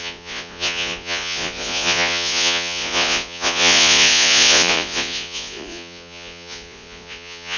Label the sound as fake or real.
fake